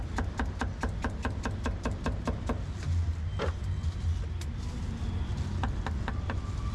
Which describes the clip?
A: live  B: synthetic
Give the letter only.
A